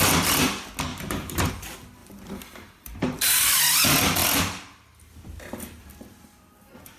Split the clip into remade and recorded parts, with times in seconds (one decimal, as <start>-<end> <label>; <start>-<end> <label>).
0.0-0.9 recorded; 0.9-1.5 remade; 1.5-2.0 recorded; 2.0-3.6 remade; 3.6-7.0 recorded